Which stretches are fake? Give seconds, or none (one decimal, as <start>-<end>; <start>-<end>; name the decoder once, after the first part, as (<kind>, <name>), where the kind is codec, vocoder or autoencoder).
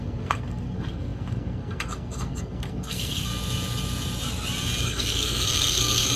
0.0-3.3 (codec, SNAC); 4.8-6.2